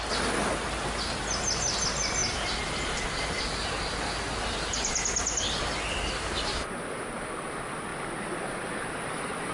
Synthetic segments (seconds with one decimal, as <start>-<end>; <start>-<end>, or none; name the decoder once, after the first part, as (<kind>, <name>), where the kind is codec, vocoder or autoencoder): 2.2-3.4 (vocoder, BigVGAN v2)